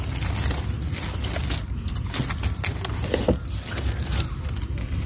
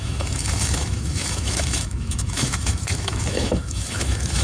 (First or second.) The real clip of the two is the first